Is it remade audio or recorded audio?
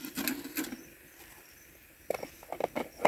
recorded